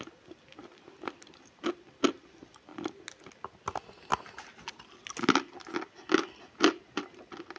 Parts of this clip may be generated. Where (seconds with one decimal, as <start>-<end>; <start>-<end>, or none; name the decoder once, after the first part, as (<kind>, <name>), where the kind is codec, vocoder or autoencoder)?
none